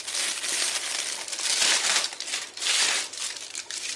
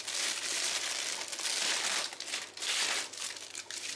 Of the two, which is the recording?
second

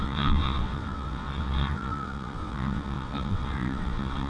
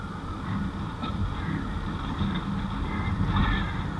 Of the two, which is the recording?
second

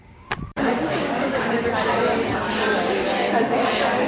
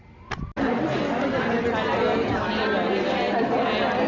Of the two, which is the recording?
second